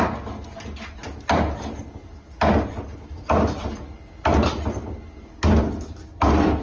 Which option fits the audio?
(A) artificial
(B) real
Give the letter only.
B